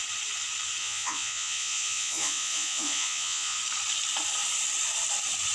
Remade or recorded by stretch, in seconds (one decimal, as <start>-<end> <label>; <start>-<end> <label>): 0.0-0.8 recorded; 0.8-3.6 remade; 3.6-5.5 recorded